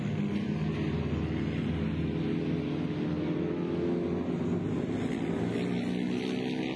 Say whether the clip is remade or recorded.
recorded